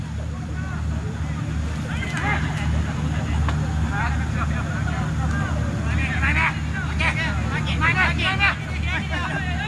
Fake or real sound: real